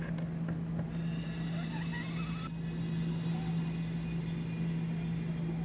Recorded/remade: recorded